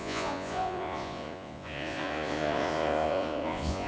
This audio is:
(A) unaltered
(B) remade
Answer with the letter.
B